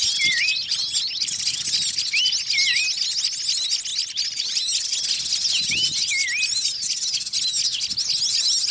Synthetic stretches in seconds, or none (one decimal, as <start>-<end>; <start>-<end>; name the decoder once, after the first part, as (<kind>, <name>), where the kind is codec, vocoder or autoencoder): none